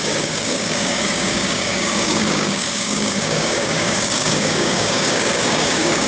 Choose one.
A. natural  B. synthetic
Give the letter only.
B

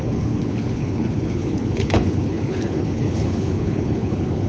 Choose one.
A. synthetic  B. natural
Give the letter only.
A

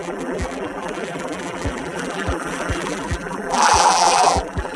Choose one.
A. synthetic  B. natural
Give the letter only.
A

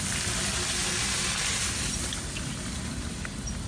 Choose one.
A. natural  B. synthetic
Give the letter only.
A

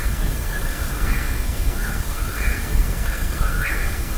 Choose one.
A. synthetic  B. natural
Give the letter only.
A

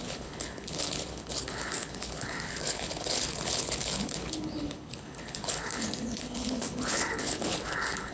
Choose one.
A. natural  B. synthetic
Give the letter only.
B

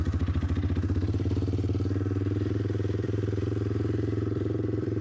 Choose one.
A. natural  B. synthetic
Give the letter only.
B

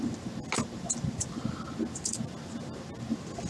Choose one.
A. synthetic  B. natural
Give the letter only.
B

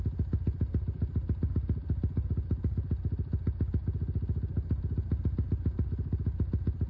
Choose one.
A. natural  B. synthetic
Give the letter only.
A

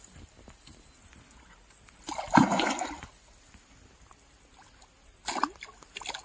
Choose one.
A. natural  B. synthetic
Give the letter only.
A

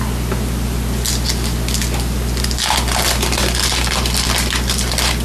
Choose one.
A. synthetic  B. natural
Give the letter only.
B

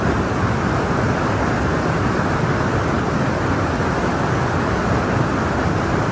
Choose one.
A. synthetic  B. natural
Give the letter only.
B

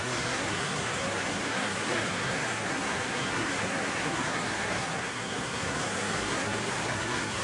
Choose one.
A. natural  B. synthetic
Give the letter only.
B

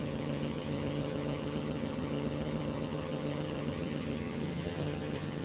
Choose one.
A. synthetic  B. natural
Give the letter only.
A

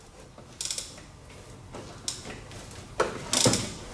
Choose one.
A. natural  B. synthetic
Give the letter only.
A